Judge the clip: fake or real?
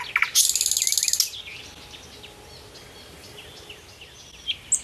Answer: real